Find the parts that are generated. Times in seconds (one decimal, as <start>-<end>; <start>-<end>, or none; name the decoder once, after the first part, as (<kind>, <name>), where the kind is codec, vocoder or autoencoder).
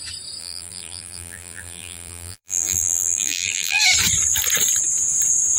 0.4-3.8 (vocoder, BigVGAN v2)